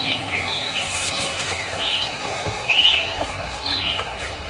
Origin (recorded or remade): remade